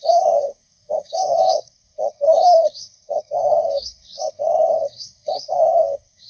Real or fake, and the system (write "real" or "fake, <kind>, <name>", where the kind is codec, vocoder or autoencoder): fake, codec, SNAC